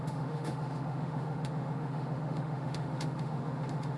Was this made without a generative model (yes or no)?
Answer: no